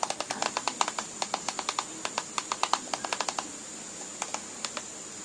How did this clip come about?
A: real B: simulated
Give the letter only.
A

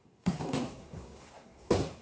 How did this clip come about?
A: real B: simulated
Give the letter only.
B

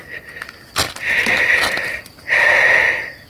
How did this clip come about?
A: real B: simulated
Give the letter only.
A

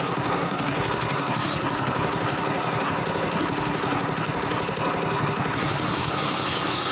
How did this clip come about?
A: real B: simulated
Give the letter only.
B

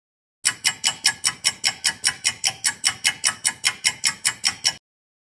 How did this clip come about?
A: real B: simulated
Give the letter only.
A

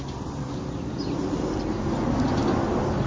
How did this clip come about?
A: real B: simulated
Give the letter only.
A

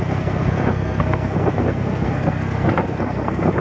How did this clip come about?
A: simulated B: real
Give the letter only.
A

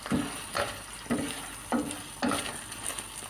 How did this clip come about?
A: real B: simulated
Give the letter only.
A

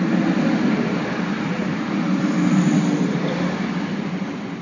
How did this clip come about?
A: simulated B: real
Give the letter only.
B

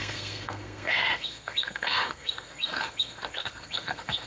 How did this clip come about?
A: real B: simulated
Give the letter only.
B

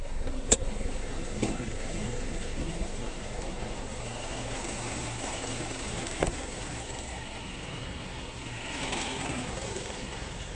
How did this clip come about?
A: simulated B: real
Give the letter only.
A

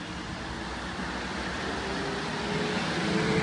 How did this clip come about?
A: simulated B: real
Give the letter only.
B